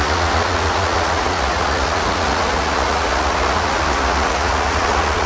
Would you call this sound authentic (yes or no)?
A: no